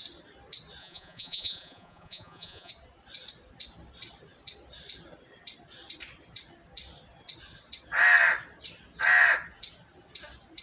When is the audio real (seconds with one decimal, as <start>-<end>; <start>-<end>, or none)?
0.0-0.8; 2.7-10.6